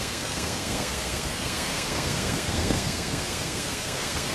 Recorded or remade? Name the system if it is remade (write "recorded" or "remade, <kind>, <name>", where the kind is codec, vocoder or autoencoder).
remade, codec, SNAC